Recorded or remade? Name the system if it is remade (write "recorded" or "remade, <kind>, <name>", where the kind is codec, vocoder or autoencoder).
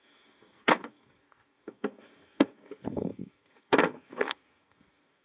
remade, codec, SNAC